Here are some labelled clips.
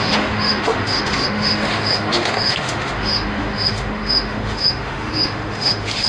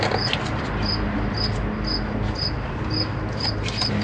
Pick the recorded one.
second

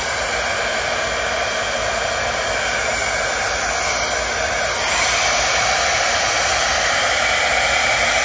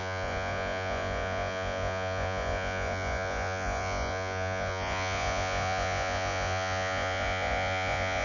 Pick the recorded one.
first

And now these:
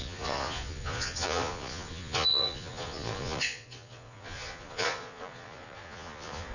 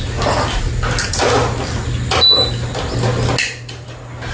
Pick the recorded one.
second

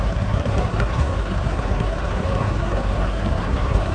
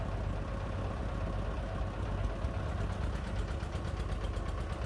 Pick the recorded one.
second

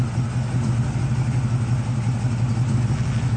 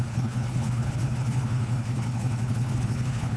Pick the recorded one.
first